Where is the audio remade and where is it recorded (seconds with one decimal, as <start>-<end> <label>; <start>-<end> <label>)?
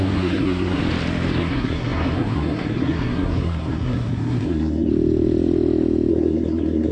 0.0-0.8 remade; 0.8-1.4 recorded; 1.4-4.9 remade; 4.9-6.1 recorded; 6.1-6.9 remade